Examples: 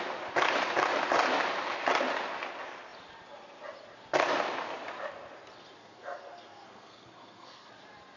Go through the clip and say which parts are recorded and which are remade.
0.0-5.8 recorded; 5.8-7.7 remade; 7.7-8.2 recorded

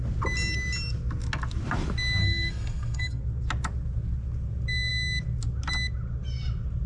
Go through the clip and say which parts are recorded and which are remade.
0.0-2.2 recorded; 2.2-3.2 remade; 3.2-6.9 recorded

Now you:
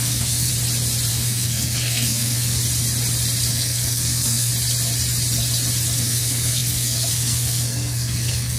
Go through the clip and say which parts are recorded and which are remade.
0.0-0.5 remade; 0.5-1.1 recorded; 1.1-2.6 remade; 2.6-3.5 recorded; 3.5-4.5 remade; 4.5-6.0 recorded; 6.0-8.6 remade